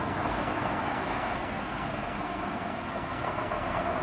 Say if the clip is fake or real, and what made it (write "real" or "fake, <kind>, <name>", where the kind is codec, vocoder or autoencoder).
fake, codec, SNAC